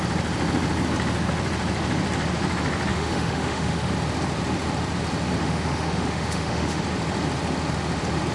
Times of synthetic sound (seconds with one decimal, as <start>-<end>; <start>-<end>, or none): 2.9-3.9; 5.4-6.8

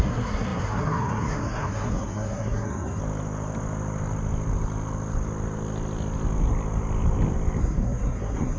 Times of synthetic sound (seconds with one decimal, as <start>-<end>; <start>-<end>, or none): 0.0-3.0; 7.6-8.6

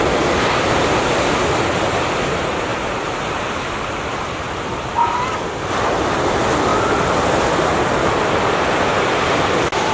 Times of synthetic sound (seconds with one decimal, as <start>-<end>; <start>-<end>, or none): 2.7-4.9